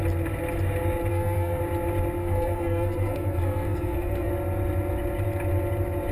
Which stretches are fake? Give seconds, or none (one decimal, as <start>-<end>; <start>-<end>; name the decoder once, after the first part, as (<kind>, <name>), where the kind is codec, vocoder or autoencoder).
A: 1.1-1.6 (codec, SNAC); 2.2-4.3